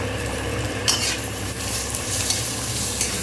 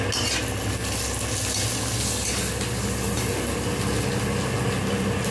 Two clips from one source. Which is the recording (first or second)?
second